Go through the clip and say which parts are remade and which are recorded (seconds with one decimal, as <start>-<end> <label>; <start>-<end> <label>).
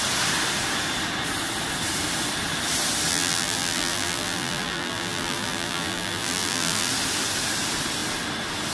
0.0-3.1 recorded; 3.1-6.9 remade; 6.9-8.7 recorded